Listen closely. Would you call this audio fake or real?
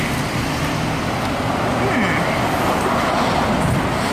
real